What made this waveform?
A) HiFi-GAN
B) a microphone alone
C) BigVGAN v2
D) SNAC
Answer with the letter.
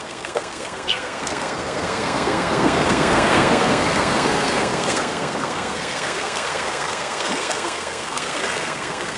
D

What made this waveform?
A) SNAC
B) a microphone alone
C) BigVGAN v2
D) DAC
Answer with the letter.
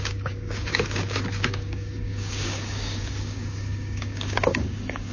D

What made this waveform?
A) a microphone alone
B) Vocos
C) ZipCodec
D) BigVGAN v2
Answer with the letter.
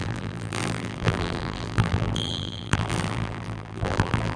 D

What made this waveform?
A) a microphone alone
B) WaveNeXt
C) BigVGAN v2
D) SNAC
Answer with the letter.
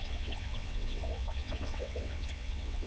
B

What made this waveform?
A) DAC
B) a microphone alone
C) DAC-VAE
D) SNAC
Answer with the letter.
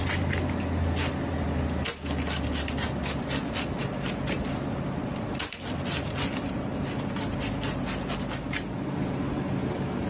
B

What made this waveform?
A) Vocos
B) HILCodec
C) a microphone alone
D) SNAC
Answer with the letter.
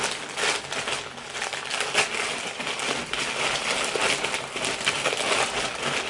C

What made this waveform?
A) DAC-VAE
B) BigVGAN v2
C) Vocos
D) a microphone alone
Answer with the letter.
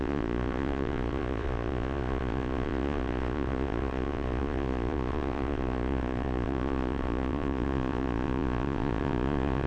C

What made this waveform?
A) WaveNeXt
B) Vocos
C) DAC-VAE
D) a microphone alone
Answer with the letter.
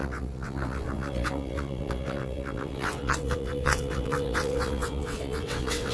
A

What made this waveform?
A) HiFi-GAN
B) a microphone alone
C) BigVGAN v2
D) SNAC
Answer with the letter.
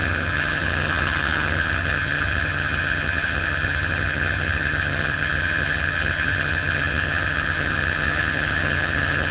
A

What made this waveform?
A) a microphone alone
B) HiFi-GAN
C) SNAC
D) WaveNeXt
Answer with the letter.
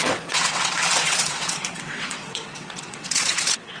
D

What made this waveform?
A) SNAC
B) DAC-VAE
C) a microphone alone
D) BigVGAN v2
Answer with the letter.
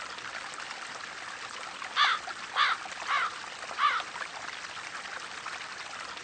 C